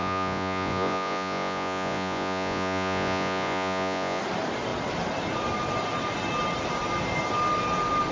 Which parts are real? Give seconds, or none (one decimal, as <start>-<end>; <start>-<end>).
4.2-8.1